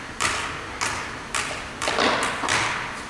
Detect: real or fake real